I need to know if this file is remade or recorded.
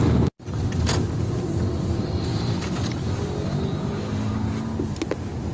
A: recorded